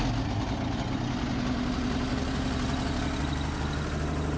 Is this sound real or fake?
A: real